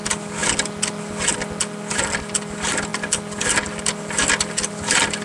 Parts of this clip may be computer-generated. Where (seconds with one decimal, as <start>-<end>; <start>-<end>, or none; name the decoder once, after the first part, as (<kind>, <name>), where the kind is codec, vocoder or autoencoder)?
none